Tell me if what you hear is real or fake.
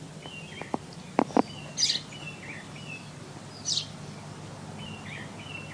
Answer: real